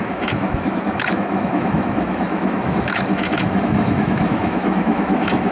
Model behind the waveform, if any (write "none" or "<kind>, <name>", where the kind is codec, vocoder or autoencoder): autoencoder, DAC-VAE